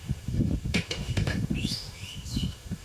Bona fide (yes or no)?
no